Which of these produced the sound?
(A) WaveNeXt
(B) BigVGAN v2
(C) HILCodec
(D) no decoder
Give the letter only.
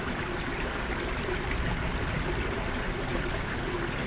D